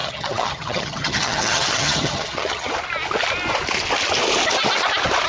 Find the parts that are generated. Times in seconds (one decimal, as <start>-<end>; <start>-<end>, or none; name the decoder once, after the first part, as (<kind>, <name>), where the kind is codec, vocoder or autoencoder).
0.0-2.7 (vocoder, HiFi-GAN)